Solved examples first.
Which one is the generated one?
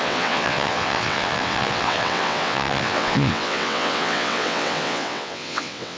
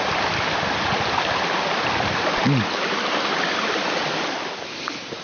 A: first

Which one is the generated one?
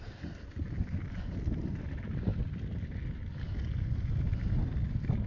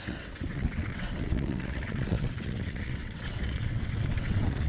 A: second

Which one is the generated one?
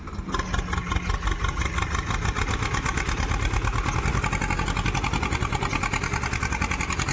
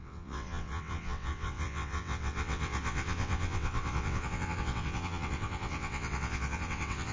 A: second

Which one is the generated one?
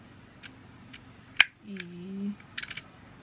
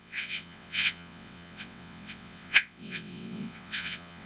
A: second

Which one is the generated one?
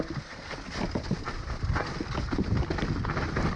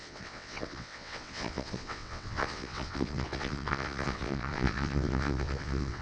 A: second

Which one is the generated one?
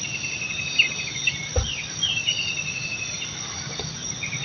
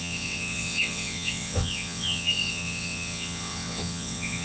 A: second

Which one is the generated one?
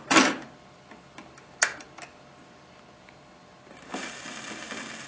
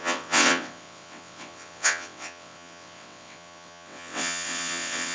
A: second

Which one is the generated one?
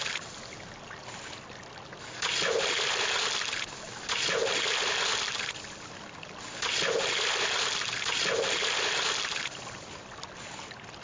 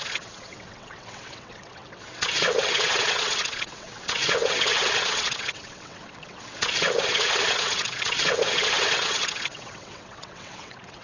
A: second